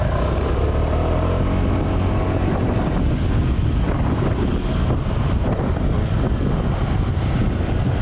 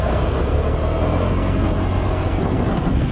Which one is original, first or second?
first